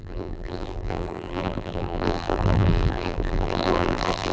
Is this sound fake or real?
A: fake